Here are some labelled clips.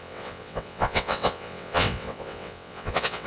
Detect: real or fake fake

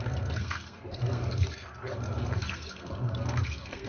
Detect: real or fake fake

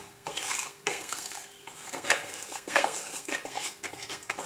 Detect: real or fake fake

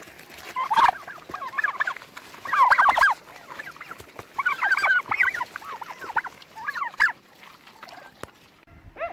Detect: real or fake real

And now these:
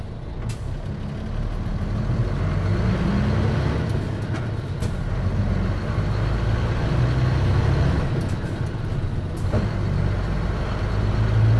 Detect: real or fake real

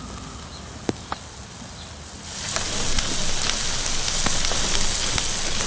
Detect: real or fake real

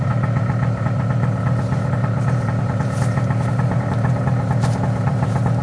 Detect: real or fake fake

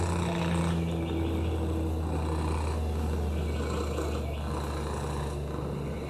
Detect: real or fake real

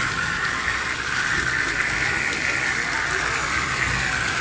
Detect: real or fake real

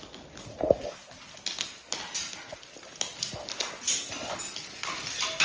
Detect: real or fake real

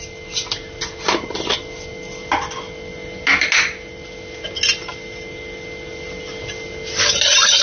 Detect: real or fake real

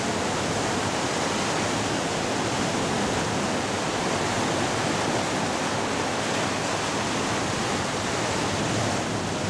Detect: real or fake real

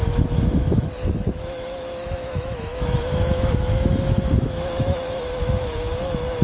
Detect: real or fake fake